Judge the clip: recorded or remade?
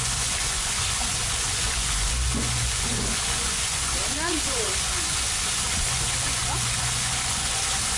remade